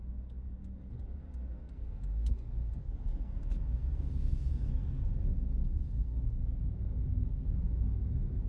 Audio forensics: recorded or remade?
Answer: remade